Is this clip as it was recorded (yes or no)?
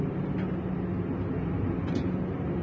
yes